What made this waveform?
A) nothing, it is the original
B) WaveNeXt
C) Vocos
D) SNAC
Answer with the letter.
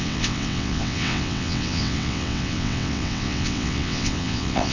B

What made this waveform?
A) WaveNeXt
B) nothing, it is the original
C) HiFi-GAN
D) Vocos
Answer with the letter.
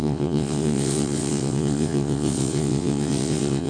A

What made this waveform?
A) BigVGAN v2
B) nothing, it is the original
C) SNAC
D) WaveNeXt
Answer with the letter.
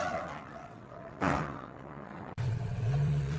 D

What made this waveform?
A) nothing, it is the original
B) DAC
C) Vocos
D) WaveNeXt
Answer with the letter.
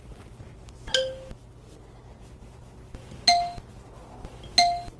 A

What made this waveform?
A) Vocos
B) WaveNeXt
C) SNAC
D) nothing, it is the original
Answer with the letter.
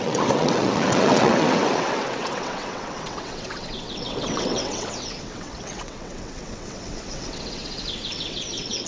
B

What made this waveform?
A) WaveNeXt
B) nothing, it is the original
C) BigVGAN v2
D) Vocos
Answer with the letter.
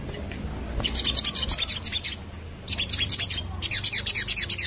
B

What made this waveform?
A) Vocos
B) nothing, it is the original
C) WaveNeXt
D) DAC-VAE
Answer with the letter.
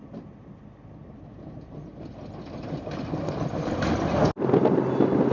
B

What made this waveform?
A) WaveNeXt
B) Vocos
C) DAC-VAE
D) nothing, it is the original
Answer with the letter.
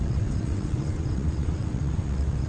A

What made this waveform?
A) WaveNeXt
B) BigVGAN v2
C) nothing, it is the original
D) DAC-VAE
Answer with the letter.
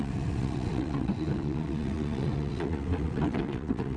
A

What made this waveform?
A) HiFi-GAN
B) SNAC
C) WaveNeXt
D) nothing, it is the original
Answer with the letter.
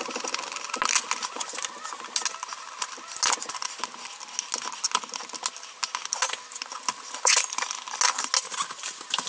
D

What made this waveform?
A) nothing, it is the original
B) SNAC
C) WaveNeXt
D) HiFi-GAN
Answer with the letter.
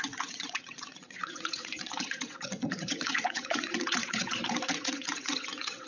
C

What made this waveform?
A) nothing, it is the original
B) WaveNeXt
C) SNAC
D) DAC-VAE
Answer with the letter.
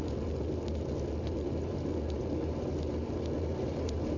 A